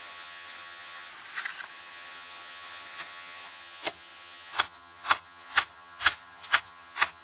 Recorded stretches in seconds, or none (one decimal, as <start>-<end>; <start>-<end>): 1.1-1.7